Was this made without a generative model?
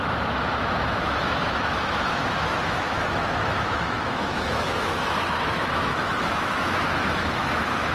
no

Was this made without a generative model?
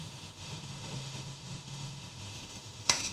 no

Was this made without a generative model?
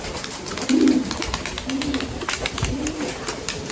yes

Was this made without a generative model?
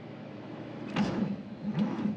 no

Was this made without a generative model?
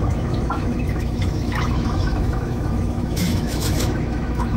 no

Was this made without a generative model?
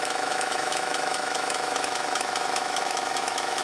no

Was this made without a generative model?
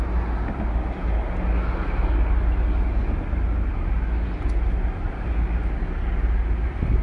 yes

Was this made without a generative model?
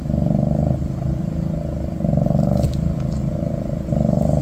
yes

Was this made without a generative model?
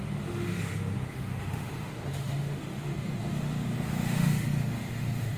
no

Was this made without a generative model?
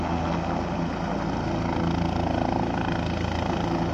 yes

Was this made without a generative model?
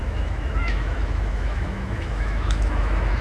no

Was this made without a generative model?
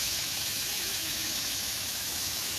no